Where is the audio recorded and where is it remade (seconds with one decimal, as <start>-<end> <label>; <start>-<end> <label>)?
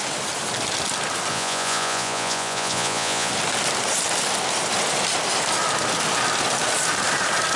0.0-1.3 recorded; 1.3-3.3 remade; 3.3-7.6 recorded